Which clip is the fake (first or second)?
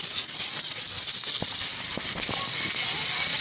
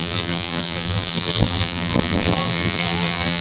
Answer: second